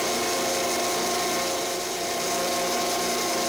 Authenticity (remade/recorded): recorded